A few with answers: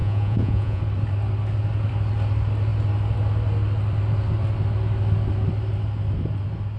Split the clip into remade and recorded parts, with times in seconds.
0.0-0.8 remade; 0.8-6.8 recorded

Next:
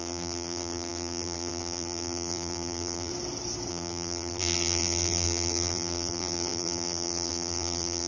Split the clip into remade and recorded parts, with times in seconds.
0.0-3.1 remade; 3.1-3.7 recorded; 3.7-8.1 remade

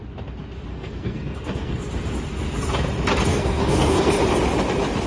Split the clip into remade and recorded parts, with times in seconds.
0.0-0.7 recorded; 0.7-1.8 remade; 1.8-3.3 recorded; 3.3-4.1 remade; 4.1-5.1 recorded